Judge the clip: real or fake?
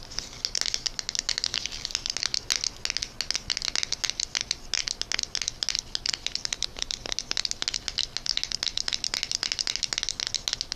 real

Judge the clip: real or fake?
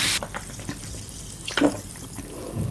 real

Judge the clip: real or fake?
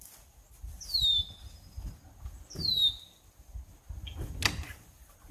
real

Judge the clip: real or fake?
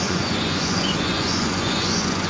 fake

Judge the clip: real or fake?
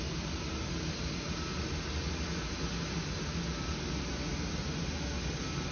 real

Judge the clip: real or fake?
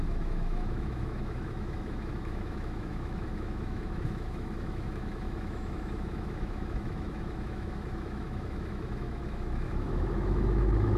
fake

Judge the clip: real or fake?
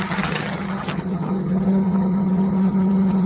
fake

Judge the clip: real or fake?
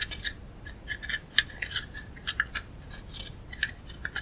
real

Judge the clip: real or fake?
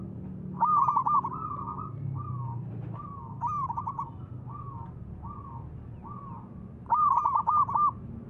real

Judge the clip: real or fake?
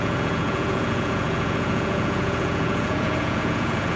fake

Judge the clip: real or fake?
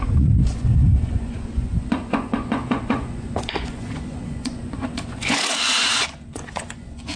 fake